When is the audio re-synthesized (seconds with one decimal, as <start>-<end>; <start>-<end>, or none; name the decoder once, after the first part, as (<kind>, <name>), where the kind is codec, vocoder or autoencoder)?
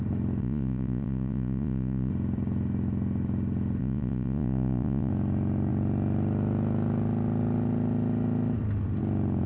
0.4-2.1 (vocoder, Vocos); 3.8-5.1